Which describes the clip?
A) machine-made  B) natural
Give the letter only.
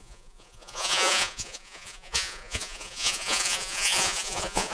A